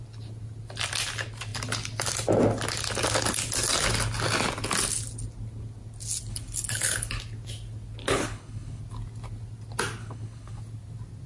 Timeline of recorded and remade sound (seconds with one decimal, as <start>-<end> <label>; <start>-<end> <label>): 0.0-6.3 recorded; 6.3-7.2 remade; 7.2-8.0 recorded; 8.0-8.8 remade; 8.8-10.0 recorded; 10.0-10.6 remade; 10.6-11.3 recorded